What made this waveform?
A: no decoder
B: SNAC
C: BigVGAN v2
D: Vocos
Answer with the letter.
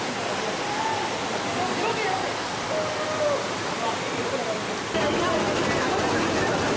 A